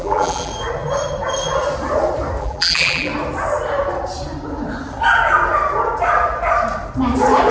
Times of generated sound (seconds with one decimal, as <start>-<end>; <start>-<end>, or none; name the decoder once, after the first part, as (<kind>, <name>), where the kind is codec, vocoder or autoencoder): 0.0-0.5 (vocoder, BigVGAN v2); 2.4-3.1